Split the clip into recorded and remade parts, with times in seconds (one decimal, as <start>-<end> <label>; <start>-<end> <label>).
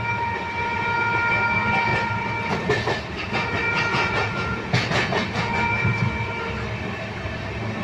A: 0.0-3.9 recorded; 3.9-5.5 remade; 5.5-7.8 recorded